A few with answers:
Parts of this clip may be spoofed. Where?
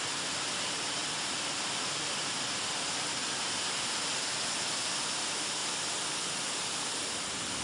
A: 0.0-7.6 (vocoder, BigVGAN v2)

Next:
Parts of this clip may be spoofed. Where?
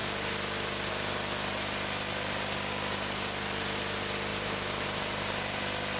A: 4.3-5.6 (vocoder, BigVGAN v2)